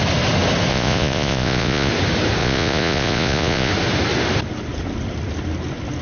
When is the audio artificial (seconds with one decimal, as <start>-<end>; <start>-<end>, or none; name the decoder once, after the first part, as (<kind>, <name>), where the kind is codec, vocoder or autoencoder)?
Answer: 0.7-1.9 (vocoder, Vocos); 2.4-3.7